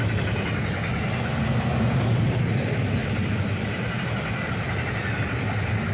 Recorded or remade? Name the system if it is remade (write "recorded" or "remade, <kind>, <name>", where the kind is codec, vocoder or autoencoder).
recorded